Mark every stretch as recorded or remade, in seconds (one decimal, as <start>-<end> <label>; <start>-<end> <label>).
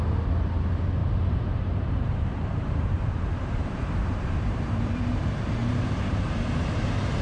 0.0-1.0 recorded; 1.0-5.0 remade; 5.0-5.6 recorded; 5.6-6.8 remade; 6.8-7.2 recorded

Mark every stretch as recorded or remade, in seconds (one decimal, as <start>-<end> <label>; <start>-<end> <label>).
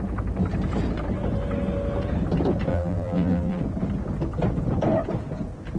0.0-2.7 recorded; 2.7-3.6 remade; 3.6-5.8 recorded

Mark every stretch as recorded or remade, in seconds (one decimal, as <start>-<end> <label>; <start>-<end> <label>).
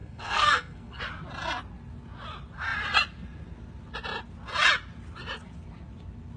0.0-1.0 remade; 1.0-6.4 recorded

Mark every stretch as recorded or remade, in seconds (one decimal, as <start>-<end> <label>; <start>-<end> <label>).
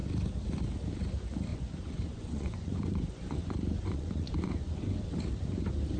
0.0-1.5 recorded; 1.5-5.0 remade; 5.0-6.0 recorded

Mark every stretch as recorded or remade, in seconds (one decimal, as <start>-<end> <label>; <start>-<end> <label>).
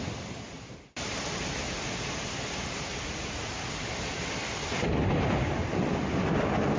0.0-2.9 recorded; 2.9-3.5 remade; 3.5-6.8 recorded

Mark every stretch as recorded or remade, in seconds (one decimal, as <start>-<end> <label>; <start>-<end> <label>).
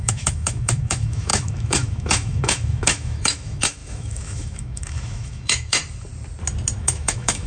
0.0-5.8 remade; 5.8-6.8 recorded; 6.8-7.5 remade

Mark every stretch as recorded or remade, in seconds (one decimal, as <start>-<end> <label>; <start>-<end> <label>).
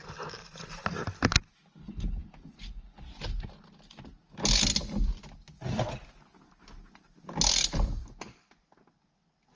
0.0-9.6 recorded